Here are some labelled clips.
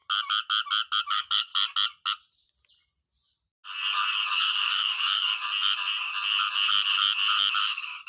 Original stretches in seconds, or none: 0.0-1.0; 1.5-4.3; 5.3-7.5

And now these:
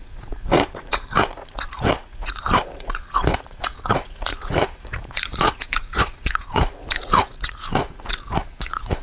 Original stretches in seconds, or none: none

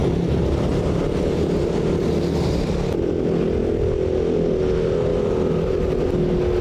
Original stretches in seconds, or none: 0.0-6.6

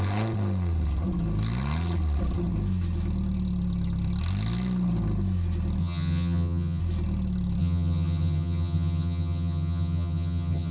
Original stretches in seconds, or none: 0.0-5.8; 6.8-7.6

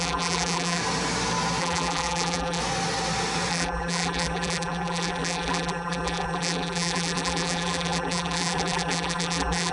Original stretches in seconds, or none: 0.8-1.6; 2.6-3.5

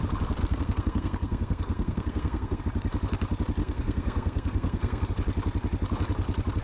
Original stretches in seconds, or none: 0.0-0.4; 2.6-3.6; 5.1-6.6